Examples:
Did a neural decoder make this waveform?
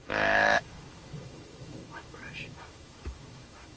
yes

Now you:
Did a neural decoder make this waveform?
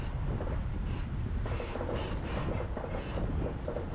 no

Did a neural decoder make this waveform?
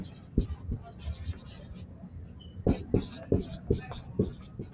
no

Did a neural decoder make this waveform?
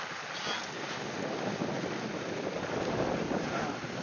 no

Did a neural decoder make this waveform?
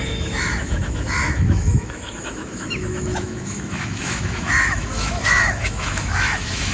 yes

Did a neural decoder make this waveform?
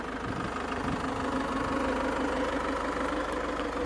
no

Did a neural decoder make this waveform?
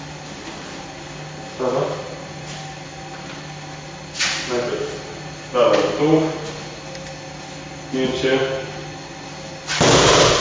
no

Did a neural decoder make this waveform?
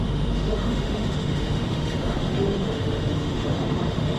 yes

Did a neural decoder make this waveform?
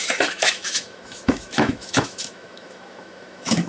yes